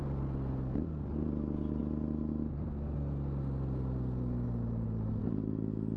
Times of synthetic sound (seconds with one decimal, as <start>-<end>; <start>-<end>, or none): none